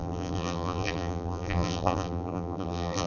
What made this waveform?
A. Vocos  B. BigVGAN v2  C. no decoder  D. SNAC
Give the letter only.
B